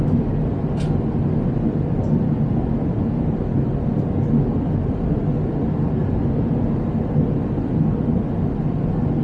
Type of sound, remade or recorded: recorded